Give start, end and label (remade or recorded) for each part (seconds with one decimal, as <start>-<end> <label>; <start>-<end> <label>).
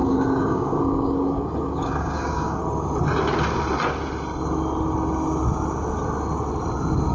0.0-2.6 remade; 2.6-7.1 recorded